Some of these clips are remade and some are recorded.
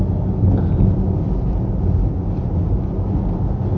recorded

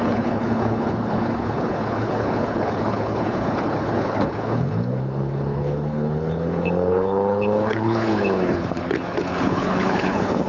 remade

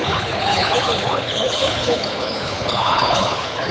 remade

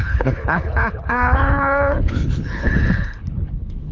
remade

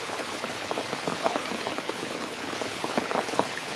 remade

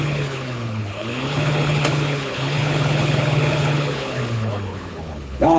remade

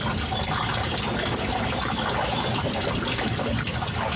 recorded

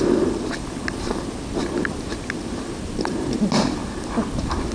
recorded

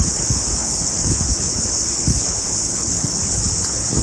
remade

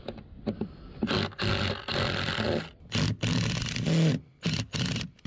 recorded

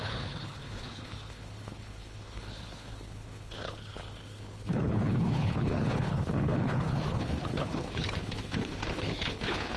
remade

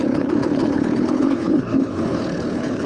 remade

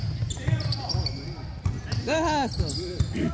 recorded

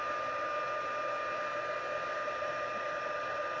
recorded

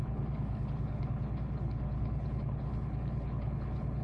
remade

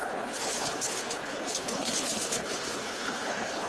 remade